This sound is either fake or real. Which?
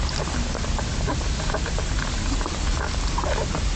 fake